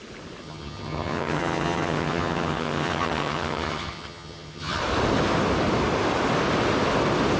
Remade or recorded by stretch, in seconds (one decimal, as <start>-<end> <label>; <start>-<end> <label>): 0.0-0.4 recorded; 0.4-4.8 remade; 4.8-7.4 recorded